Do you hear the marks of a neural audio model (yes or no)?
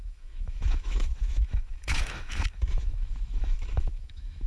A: yes